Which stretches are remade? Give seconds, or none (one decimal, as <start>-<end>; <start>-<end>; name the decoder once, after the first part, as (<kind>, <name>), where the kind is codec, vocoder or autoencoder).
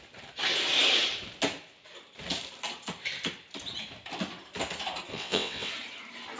5.1-5.7 (vocoder, WaveNeXt)